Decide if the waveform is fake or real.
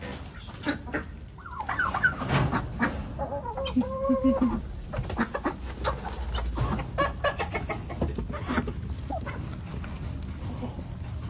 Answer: real